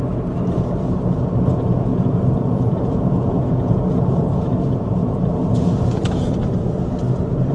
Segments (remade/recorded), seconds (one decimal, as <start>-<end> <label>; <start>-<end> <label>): 0.0-1.9 recorded; 1.9-6.4 remade; 6.4-7.5 recorded